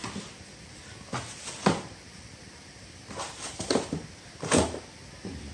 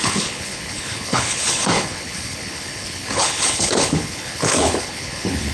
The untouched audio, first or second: first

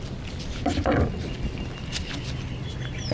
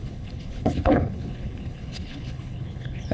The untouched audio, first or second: first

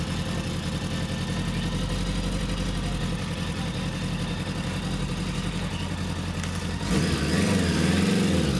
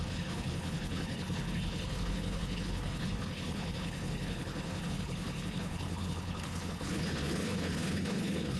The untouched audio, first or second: first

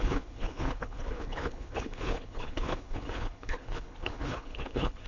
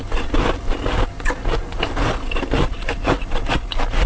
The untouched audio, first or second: second